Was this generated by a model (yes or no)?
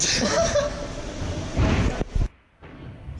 no